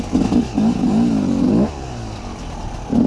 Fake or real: real